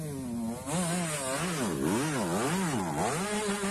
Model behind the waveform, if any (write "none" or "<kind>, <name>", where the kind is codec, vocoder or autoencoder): none